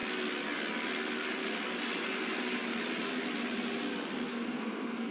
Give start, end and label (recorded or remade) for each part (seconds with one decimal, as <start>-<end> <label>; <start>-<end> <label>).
0.0-4.3 recorded; 4.3-5.1 remade